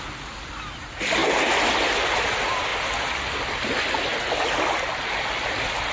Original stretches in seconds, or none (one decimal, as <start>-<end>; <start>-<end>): 0.0-5.9